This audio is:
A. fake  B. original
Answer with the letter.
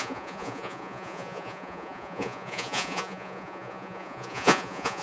A